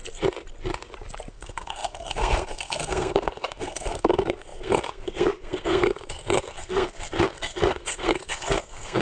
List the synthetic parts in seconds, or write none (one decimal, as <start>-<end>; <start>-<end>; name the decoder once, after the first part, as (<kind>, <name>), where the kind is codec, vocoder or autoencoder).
1.3-9.0 (codec, SNAC)